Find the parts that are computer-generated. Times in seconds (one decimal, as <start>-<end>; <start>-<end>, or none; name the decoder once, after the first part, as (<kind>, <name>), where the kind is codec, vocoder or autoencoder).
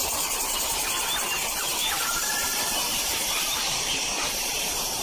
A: 0.0-1.0 (vocoder, BigVGAN v2); 1.7-5.0